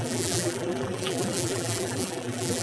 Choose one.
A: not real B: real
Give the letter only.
A